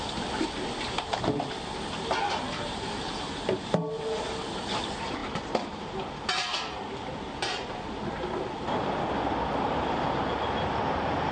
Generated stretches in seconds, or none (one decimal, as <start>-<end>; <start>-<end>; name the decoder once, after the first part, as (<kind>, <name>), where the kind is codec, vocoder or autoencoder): none